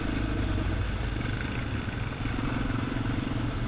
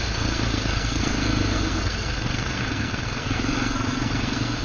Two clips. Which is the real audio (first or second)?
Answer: first